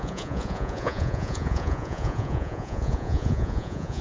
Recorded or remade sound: remade